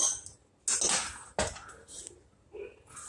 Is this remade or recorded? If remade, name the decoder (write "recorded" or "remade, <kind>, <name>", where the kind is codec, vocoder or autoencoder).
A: recorded